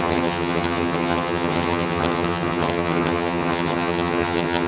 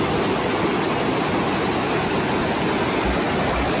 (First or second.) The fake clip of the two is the first